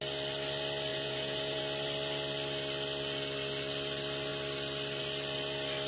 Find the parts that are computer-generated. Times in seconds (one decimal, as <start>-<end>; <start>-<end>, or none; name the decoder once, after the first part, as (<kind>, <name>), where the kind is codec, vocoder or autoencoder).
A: 0.9-1.6 (vocoder, Vocos)